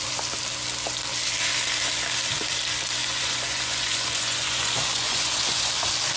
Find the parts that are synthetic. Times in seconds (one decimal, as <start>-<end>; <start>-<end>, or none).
3.0-5.7